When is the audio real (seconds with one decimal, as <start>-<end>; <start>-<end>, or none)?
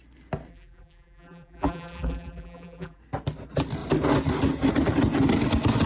0.0-0.5; 3.0-5.9